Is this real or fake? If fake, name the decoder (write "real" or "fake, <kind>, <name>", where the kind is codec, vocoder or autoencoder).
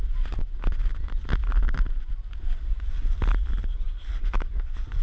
real